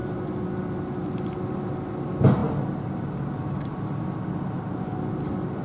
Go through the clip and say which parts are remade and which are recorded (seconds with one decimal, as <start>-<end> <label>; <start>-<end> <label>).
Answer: 0.0-5.6 recorded